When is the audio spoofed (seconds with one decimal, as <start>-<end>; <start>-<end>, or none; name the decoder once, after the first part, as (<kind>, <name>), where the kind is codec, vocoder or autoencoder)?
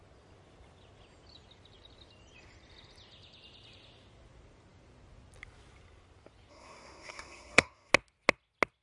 6.5-7.9 (codec, SNAC)